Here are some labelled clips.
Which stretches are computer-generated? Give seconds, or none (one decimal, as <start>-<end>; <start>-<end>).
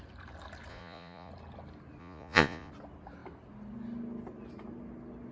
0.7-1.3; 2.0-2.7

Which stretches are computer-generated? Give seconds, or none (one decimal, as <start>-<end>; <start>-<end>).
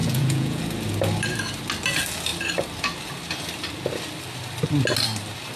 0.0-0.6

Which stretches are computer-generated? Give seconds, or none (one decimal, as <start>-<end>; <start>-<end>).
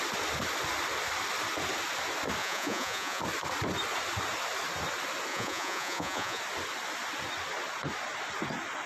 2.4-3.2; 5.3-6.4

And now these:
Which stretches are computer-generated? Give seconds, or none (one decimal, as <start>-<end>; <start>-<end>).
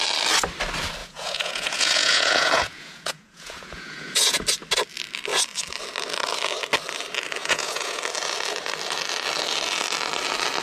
1.0-4.4; 7.4-8.0